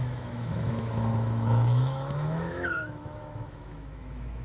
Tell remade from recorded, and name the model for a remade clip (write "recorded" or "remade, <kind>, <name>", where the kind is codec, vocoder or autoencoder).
remade, autoencoder, DAC-VAE